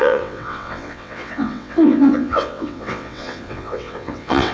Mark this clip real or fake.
fake